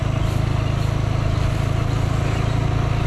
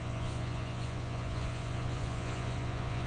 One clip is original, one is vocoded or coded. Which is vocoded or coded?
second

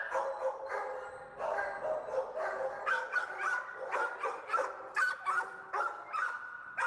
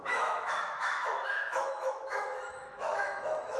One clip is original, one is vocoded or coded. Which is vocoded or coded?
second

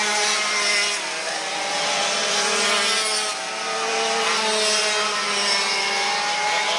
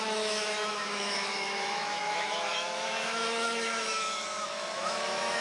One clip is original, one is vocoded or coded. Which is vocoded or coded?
second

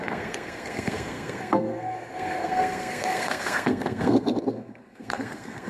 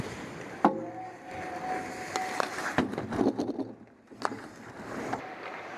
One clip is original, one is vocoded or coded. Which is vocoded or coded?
first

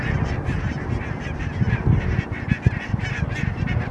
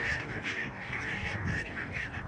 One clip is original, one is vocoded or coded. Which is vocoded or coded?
second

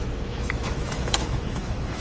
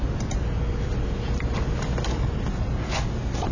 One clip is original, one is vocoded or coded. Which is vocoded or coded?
first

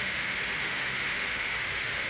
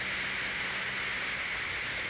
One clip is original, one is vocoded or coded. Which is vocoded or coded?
first